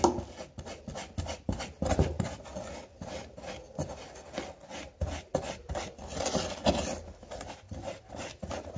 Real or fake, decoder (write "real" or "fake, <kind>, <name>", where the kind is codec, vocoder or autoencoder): real